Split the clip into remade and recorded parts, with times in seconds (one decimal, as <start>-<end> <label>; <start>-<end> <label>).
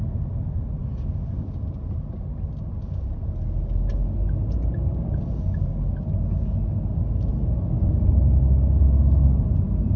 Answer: 0.0-10.0 recorded